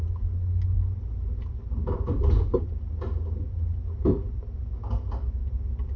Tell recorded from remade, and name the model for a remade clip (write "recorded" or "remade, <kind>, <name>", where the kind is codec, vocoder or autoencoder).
recorded